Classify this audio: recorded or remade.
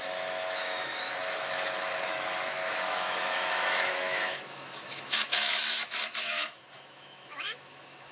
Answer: remade